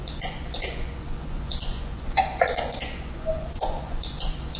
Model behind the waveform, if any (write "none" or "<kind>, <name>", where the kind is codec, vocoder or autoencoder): vocoder, Vocos